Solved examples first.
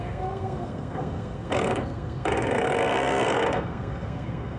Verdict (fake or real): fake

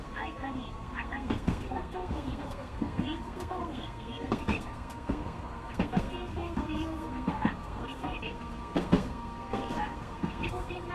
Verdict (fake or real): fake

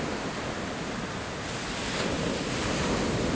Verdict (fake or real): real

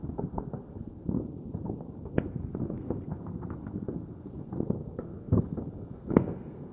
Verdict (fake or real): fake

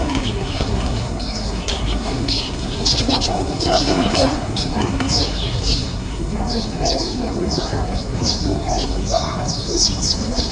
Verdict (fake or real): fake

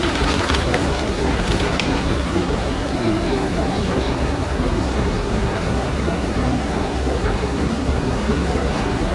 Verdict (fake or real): fake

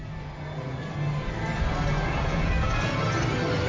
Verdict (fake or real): real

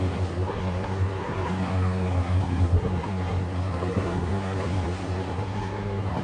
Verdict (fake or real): fake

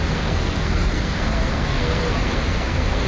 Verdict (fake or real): fake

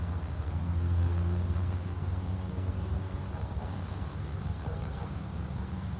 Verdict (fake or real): fake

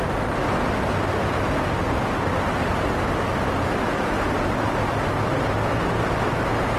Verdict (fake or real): real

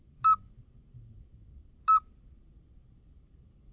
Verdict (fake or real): real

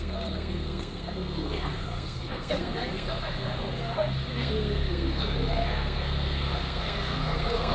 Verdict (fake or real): fake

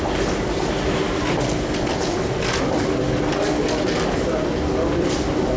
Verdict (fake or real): real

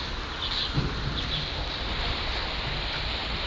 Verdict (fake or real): real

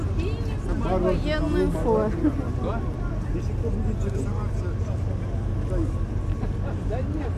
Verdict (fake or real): real